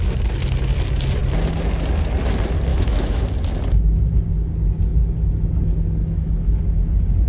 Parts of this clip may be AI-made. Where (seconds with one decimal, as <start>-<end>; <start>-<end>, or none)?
2.7-3.2; 6.0-6.6